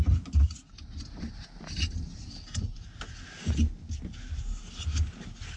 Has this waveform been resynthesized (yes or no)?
no